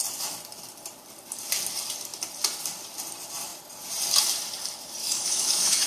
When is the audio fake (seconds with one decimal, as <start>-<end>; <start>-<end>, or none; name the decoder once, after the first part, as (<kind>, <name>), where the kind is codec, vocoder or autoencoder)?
5.0-5.9 (autoencoder, DAC-VAE)